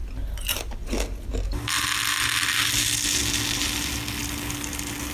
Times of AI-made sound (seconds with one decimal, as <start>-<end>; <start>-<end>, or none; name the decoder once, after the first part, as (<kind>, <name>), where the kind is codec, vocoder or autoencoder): none